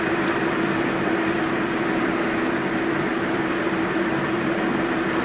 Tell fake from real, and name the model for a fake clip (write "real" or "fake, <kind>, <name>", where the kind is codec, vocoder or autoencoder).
real